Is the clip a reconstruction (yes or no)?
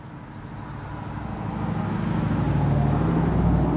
no